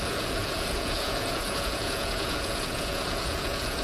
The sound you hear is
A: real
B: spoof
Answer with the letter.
B